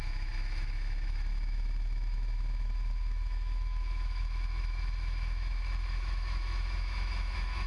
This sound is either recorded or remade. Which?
remade